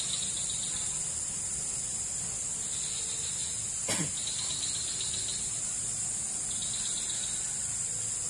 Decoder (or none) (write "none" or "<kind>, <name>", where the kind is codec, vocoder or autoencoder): none